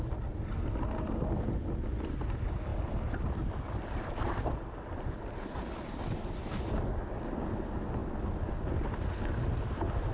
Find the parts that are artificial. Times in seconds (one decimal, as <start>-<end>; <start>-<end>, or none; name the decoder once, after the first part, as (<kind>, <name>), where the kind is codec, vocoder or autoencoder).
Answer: none